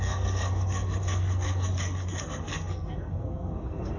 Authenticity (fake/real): fake